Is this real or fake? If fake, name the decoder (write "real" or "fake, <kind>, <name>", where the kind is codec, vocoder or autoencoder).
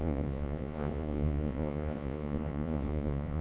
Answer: fake, vocoder, Vocos